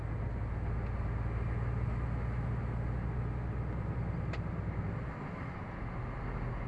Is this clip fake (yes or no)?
no